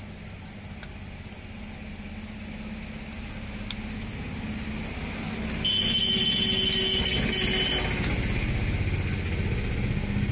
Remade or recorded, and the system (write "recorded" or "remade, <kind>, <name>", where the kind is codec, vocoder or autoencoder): recorded